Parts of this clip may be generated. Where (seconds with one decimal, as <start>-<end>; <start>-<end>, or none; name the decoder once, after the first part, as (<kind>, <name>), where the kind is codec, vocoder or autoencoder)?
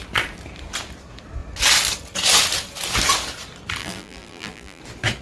3.8-4.8 (vocoder, BigVGAN v2)